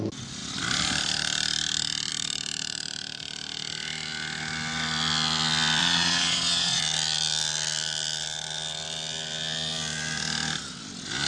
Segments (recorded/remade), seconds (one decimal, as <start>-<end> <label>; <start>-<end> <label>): 0.0-5.8 recorded; 5.8-6.8 remade; 6.8-11.3 recorded